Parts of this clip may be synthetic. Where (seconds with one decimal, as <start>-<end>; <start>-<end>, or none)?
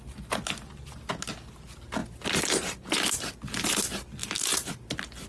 4.2-4.7